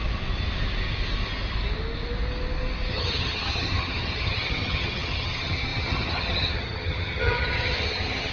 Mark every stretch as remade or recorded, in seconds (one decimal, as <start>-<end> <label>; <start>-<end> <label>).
0.0-2.9 recorded; 2.9-8.3 remade